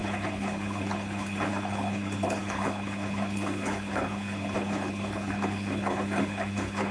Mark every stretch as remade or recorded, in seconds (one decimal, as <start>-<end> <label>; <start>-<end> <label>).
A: 0.0-6.9 remade